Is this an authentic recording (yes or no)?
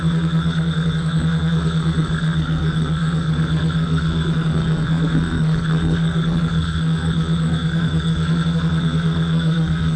no